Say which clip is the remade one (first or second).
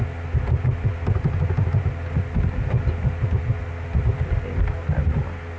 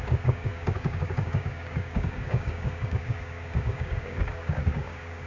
second